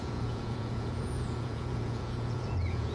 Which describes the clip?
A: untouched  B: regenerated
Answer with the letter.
B